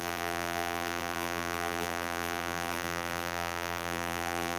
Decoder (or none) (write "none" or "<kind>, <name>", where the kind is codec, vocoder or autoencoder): vocoder, BigVGAN v2